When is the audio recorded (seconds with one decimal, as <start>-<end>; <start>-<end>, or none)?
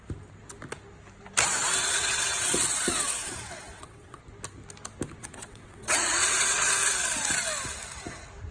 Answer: 0.0-1.8; 4.2-5.2; 6.7-8.5